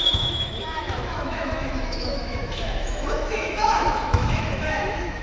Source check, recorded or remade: remade